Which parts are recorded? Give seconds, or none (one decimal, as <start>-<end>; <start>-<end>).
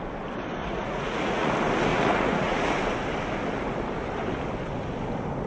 0.0-0.6; 1.5-1.9; 2.7-5.5